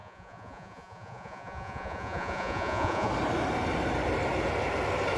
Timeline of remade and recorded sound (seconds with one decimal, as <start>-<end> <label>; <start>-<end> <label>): 0.0-3.1 remade; 3.1-5.2 recorded